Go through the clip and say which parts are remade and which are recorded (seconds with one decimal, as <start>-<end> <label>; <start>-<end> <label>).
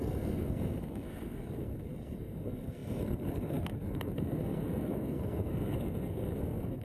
0.0-6.8 remade